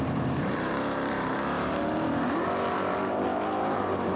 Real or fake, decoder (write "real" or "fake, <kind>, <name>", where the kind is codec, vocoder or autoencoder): fake, vocoder, BigVGAN v2